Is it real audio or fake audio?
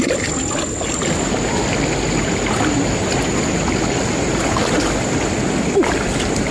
real